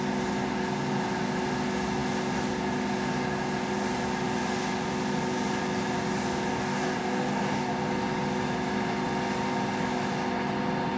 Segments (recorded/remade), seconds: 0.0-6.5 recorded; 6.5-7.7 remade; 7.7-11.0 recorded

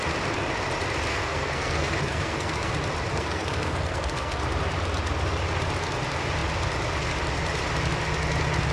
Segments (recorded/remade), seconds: 0.0-1.1 recorded; 1.1-2.7 remade; 2.7-3.1 recorded; 3.1-4.4 remade; 4.4-8.7 recorded

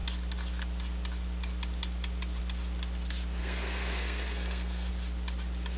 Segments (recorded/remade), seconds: 0.0-3.4 recorded; 3.4-4.9 remade; 4.9-5.8 recorded

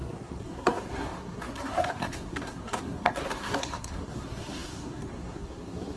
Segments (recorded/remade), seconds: 0.0-6.0 remade

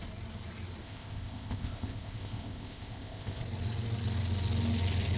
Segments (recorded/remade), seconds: 0.0-0.8 recorded; 0.8-3.4 remade; 3.4-5.2 recorded

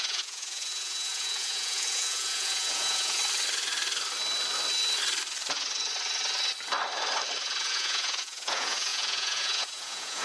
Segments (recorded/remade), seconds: 0.0-3.2 remade; 3.2-7.6 recorded; 7.6-10.2 remade

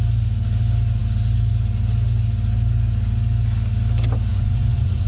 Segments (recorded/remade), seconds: 0.0-4.3 recorded; 4.3-5.1 remade

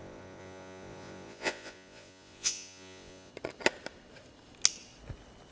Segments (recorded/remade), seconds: 0.0-3.3 remade; 3.3-5.5 recorded